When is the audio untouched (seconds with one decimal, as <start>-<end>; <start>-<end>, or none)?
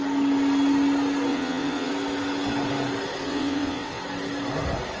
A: 0.0-1.3; 1.9-3.2; 4.0-5.0